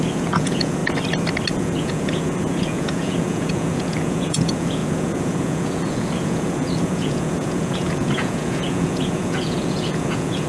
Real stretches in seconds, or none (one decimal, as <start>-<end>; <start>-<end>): 0.8-1.5